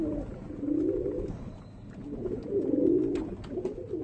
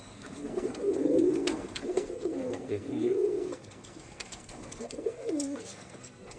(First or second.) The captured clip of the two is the first